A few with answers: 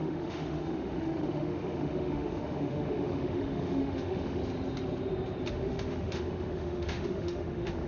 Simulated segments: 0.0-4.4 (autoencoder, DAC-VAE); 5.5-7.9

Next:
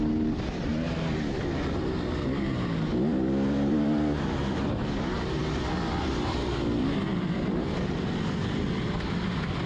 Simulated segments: 0.0-0.7 (vocoder, BigVGAN v2); 4.8-9.7

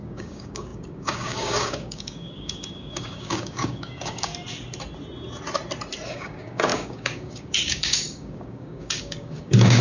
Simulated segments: 0.0-4.3 (codec, DAC); 6.1-9.8

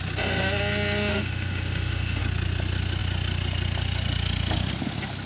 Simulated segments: 1.1-2.2 (autoencoder, DAC-VAE)

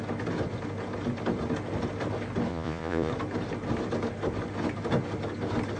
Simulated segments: 2.5-3.1 (vocoder, Vocos)

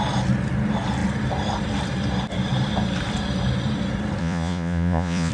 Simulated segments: 4.2-5.3 (vocoder, Vocos)